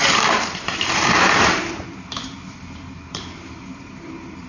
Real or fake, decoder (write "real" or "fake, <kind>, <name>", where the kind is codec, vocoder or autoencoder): fake, vocoder, BigVGAN v2